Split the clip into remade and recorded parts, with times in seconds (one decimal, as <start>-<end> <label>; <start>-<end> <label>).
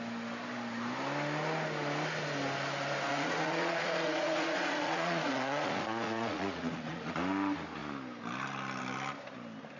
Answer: 0.0-3.1 recorded; 3.1-7.2 remade; 7.2-9.8 recorded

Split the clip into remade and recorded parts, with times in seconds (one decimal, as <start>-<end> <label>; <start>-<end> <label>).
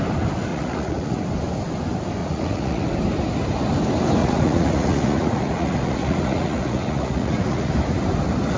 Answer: 0.0-0.5 recorded; 0.5-1.2 remade; 1.2-2.2 recorded; 2.2-2.8 remade; 2.8-4.2 recorded; 4.2-7.7 remade; 7.7-8.6 recorded